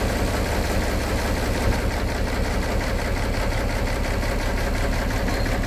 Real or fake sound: real